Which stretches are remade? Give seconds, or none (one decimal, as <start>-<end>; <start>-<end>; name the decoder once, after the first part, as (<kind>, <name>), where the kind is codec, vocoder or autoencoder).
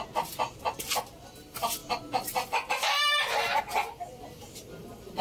none